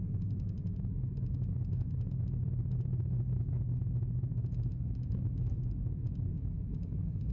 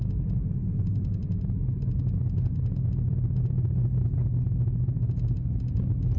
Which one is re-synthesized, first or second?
first